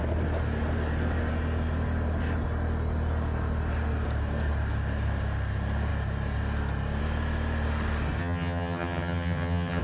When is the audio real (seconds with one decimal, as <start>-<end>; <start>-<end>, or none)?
0.0-8.2